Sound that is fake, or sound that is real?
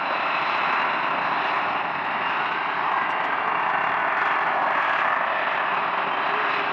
real